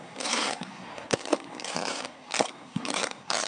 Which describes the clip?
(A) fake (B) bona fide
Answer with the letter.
A